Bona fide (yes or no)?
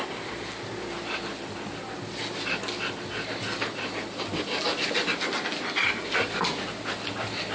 yes